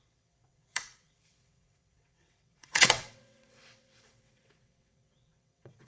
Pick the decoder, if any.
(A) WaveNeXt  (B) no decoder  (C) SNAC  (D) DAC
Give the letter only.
A